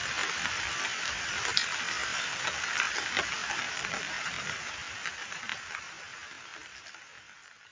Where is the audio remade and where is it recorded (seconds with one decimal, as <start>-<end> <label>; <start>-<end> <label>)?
0.0-2.1 recorded; 2.1-2.7 remade; 2.7-3.4 recorded; 3.4-5.4 remade; 5.4-7.7 recorded